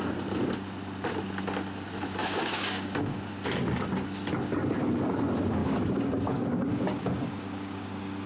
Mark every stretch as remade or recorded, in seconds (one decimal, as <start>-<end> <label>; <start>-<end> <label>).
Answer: 0.0-2.2 recorded; 2.2-3.3 remade; 3.3-5.6 recorded; 5.6-7.9 remade; 7.9-8.3 recorded